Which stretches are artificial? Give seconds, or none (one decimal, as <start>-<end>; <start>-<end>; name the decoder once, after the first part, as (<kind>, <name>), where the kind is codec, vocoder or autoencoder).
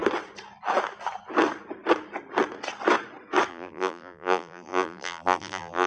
3.5-5.9 (vocoder, BigVGAN v2)